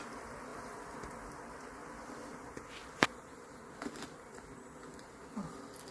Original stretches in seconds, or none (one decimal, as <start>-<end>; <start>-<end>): 0.0-0.5; 1.3-2.8; 3.6-5.9